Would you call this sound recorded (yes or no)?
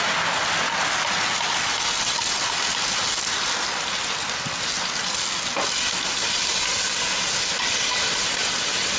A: yes